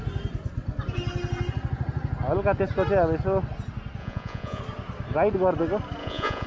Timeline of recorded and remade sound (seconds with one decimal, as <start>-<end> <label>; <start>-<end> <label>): 0.0-4.0 recorded; 4.0-4.6 remade; 4.6-6.0 recorded; 6.0-6.5 remade